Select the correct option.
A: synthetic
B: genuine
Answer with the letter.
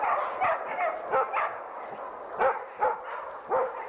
B